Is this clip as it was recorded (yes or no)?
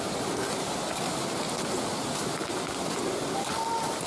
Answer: yes